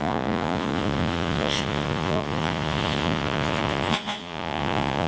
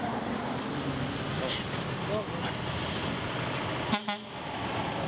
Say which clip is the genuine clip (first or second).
second